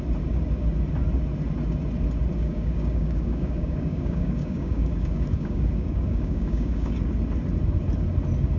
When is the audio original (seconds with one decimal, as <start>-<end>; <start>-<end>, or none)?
0.0-2.4; 7.1-8.6